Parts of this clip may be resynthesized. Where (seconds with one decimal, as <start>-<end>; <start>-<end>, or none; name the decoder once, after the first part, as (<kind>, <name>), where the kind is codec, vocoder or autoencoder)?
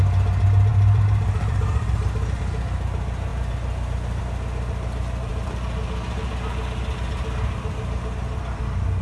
0.7-2.4 (vocoder, BigVGAN v2); 5.3-6.3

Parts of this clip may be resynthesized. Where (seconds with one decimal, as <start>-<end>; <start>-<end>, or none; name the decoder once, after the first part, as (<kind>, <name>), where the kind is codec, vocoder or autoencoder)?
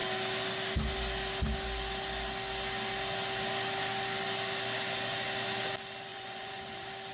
6.1-6.6 (vocoder, Vocos)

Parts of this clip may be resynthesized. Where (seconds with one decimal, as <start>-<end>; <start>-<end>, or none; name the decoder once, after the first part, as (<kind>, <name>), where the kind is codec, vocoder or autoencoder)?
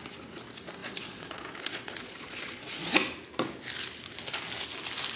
0.8-2.9 (vocoder, Vocos)